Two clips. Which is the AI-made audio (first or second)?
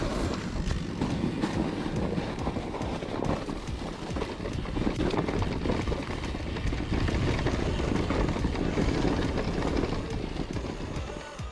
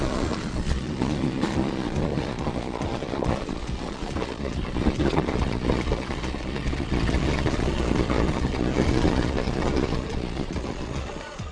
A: second